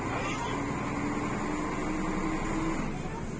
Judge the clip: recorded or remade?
recorded